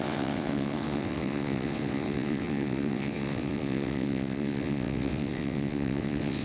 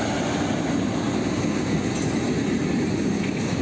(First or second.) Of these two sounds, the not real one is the first